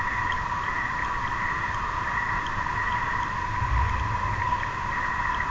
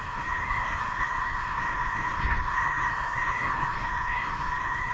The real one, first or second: first